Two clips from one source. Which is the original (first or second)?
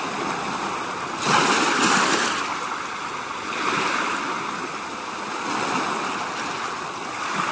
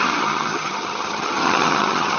first